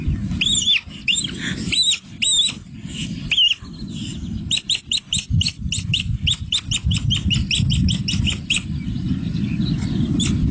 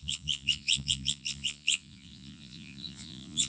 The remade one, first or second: second